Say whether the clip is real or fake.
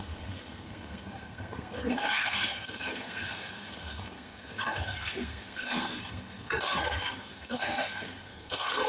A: fake